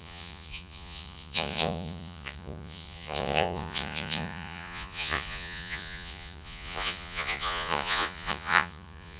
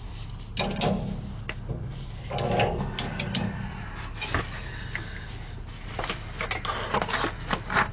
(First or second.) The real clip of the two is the second